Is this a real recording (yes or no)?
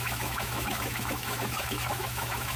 no